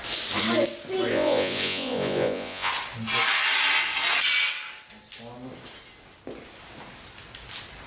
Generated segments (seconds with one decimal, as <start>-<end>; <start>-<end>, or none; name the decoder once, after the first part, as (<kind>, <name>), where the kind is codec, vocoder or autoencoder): 1.1-2.7 (vocoder, Vocos)